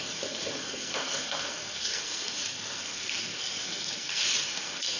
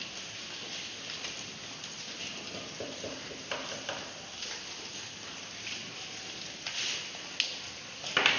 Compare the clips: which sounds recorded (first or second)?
second